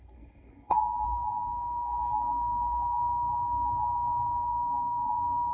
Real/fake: fake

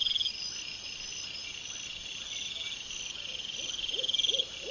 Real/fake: real